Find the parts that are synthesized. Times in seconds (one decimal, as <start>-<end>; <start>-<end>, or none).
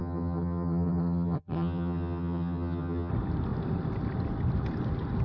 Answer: 0.0-3.1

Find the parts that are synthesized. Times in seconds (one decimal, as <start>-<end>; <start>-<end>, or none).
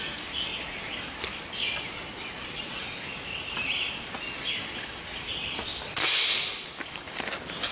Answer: none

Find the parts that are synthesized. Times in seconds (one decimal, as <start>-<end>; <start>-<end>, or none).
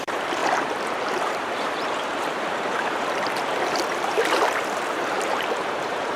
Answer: 0.0-0.4; 1.2-6.2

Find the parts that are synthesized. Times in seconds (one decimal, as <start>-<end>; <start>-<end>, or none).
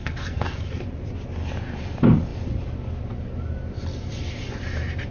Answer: 0.0-0.8